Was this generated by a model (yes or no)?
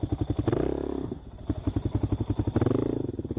no